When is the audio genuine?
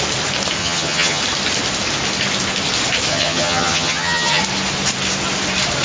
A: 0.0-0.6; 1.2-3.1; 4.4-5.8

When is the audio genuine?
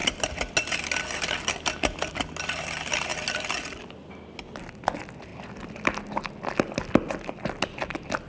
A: 0.0-8.3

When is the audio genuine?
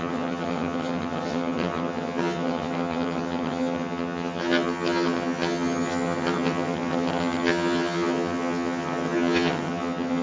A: none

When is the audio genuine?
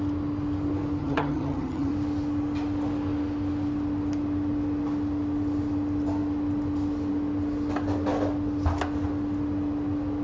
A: 0.0-1.0; 1.9-10.2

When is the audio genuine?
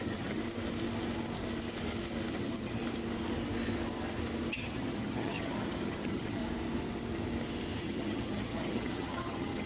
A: 0.4-2.3; 2.8-4.5; 6.4-7.8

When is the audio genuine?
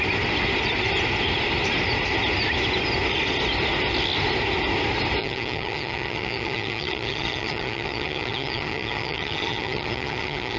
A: 0.0-5.2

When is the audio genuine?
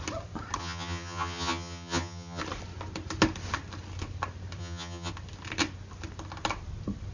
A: 0.0-0.6; 2.4-4.6; 5.1-7.1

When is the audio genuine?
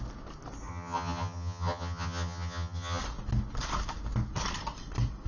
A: 0.0-0.7; 3.0-5.3